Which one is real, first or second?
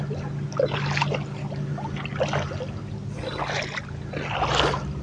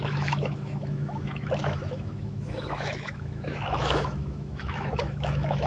first